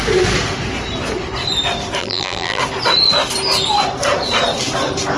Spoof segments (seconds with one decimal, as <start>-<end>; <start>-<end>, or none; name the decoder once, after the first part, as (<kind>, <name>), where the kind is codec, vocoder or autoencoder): 2.0-2.6 (vocoder, BigVGAN v2)